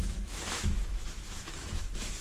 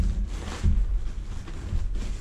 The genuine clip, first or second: second